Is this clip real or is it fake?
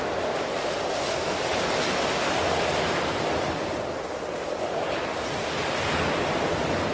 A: real